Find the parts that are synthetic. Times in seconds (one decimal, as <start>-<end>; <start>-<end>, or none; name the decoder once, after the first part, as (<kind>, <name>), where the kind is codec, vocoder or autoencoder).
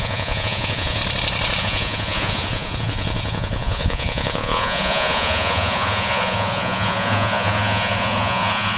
0.0-1.0 (vocoder, Vocos); 1.6-8.8